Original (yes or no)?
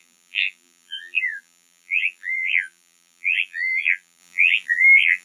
no